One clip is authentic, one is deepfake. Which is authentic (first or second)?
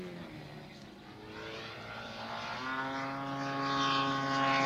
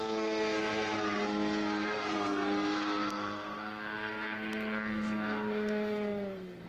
first